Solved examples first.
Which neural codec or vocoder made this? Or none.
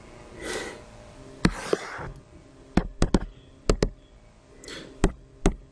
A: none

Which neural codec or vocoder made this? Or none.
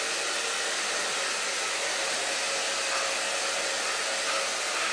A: none